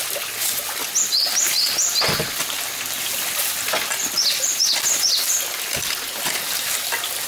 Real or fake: real